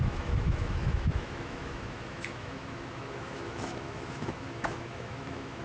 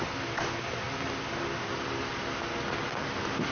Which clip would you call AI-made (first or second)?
first